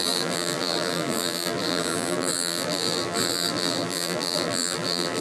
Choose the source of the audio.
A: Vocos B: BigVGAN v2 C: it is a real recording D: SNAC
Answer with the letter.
B